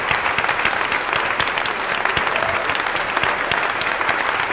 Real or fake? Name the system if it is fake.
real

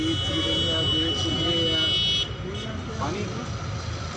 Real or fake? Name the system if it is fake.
real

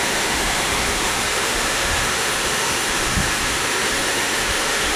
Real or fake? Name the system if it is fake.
fake, autoencoder, DAC-VAE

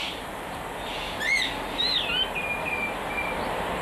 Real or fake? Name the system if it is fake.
real